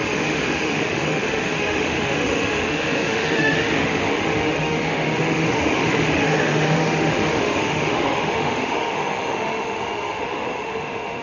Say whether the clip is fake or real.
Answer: fake